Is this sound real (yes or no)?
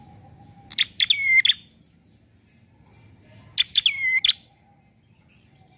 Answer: yes